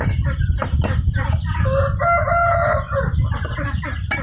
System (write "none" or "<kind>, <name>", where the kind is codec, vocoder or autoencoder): none